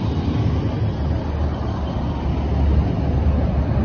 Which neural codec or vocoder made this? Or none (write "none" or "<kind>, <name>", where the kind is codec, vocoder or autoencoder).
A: none